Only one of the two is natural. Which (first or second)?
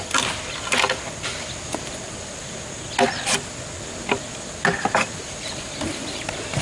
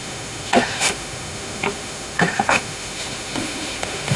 first